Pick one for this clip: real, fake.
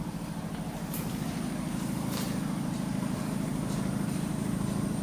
fake